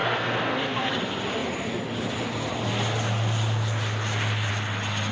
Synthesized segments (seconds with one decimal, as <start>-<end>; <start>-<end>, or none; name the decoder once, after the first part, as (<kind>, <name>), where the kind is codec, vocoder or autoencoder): 0.0-0.9 (codec, SNAC)